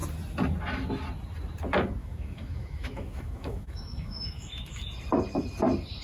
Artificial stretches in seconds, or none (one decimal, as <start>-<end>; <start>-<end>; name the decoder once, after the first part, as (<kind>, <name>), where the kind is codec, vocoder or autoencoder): 2.0-4.8 (autoencoder, DAC-VAE)

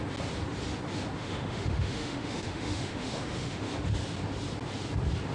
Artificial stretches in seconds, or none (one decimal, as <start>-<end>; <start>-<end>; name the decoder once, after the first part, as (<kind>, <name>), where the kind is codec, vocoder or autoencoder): 1.2-3.7 (autoencoder, DAC-VAE)

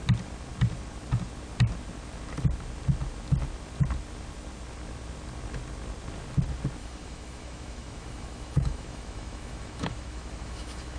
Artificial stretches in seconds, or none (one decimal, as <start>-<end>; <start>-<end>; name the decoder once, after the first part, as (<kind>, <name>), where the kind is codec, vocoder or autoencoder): 6.8-11.0 (autoencoder, DAC-VAE)

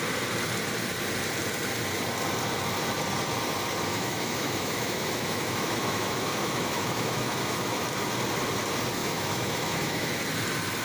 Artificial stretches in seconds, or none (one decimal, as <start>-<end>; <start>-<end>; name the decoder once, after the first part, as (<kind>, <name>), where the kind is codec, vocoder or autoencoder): 3.9-7.8 (autoencoder, DAC-VAE); 9.0-10.2

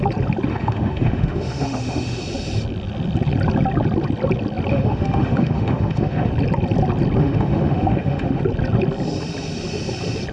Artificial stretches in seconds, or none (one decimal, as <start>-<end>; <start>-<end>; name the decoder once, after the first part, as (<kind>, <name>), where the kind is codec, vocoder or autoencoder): 0.5-2.2 (autoencoder, DAC-VAE); 4.7-6.3; 7.2-8.4